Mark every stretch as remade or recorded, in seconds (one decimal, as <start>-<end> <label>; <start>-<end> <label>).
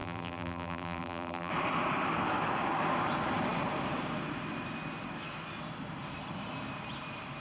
0.0-1.5 remade; 1.5-7.4 recorded